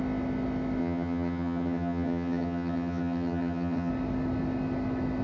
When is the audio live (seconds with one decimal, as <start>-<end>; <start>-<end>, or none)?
0.0-0.8; 3.9-5.2